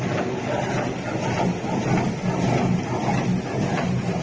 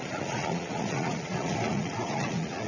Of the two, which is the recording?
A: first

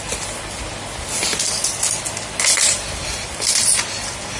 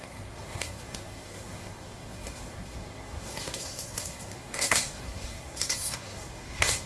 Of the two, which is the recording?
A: first